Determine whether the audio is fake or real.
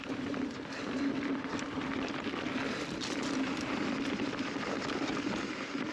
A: real